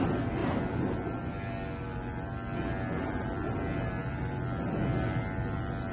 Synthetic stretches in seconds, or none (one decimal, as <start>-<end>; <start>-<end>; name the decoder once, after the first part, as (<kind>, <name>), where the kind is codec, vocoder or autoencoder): none